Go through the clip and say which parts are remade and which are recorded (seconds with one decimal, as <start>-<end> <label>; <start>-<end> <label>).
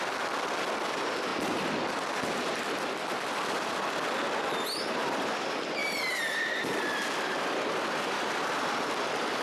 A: 0.0-1.3 remade; 1.3-2.4 recorded; 2.4-9.4 remade